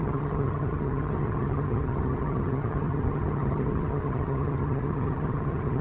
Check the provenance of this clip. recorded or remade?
remade